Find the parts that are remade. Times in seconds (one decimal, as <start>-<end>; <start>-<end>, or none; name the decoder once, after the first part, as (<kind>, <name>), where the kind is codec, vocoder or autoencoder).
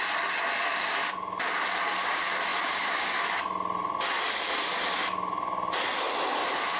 none